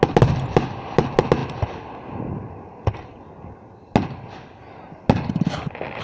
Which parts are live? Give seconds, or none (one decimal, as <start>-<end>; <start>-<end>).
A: 0.0-6.0